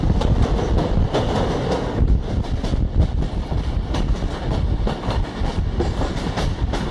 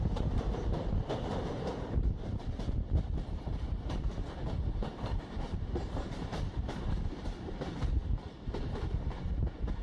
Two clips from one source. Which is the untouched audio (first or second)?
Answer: first